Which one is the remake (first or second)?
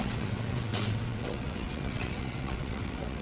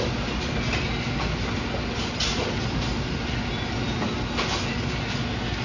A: first